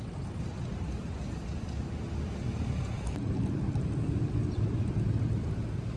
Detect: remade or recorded remade